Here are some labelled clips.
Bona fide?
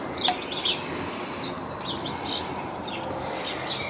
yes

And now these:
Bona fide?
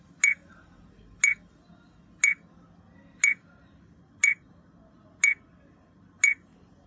yes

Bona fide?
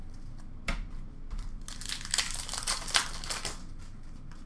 yes